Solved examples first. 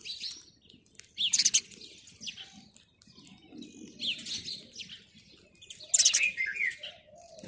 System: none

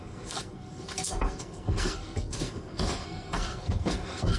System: codec, SNAC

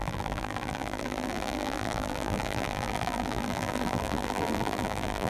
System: vocoder, BigVGAN v2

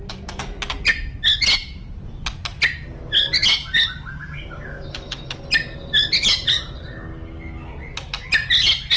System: none